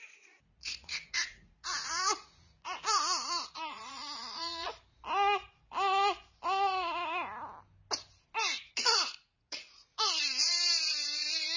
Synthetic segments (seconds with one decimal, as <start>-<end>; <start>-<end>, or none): 0.0-4.7; 8.6-11.6